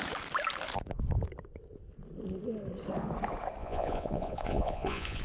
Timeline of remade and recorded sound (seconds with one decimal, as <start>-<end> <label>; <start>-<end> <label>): 0.0-3.6 recorded; 3.6-5.2 remade